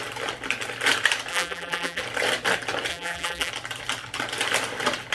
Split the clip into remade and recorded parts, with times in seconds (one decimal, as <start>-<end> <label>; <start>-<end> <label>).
0.0-1.3 recorded; 1.3-2.0 remade; 2.0-2.9 recorded; 2.9-3.5 remade; 3.5-5.1 recorded